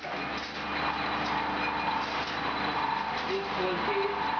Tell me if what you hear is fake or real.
real